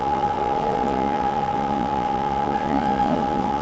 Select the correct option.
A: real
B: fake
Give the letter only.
B